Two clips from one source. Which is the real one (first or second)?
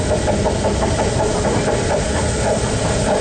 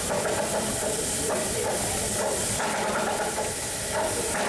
first